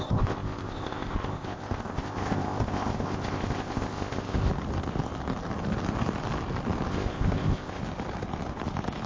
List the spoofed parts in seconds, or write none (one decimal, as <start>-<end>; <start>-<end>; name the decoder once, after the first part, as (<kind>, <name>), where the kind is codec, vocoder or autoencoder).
0.0-4.5 (codec, ZipCodec); 6.9-7.8